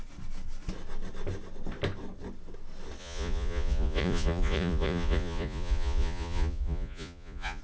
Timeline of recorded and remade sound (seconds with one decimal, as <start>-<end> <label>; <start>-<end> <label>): 0.0-3.0 recorded; 3.0-7.6 remade